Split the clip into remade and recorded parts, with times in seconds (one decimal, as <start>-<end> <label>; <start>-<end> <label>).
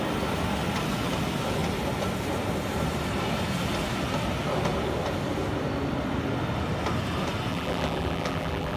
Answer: 0.0-7.5 recorded; 7.5-8.8 remade